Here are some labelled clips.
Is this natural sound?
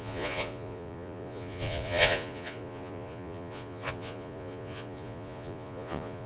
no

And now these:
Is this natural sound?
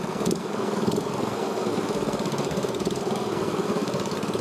no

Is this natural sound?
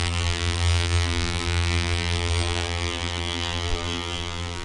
no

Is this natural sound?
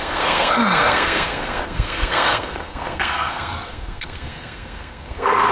no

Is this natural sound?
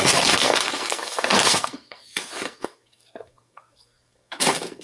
no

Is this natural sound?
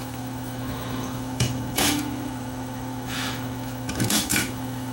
no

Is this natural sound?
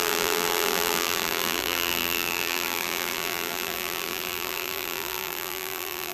no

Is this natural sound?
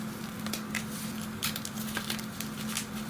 yes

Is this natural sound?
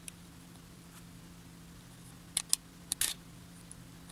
yes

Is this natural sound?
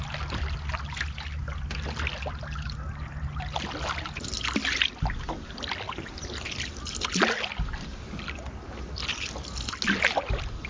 yes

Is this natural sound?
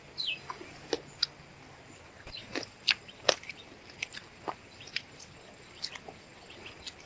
yes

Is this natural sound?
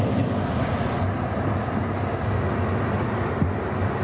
yes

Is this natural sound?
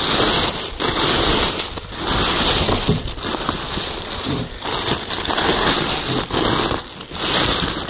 yes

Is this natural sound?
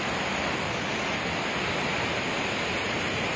yes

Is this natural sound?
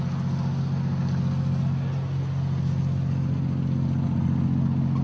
yes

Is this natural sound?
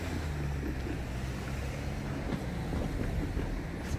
yes